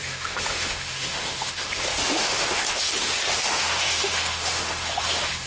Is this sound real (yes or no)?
no